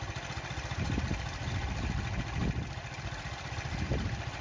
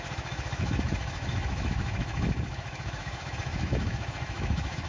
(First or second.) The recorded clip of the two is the first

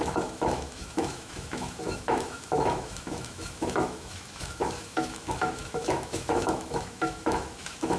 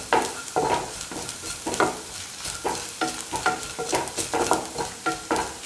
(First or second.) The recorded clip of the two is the second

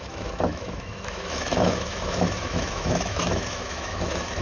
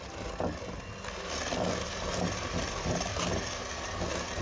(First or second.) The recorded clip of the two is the second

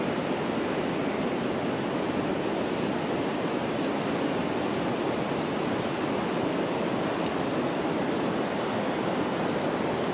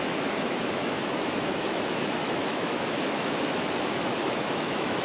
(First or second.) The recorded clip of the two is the first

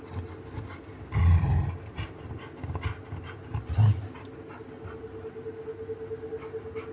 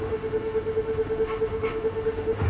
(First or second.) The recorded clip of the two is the first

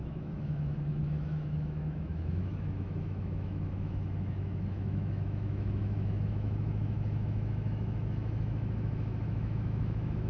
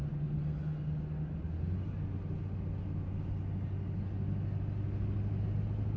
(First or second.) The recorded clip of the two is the second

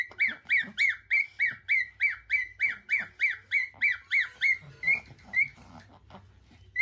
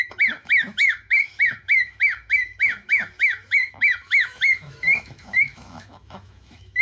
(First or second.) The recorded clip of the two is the first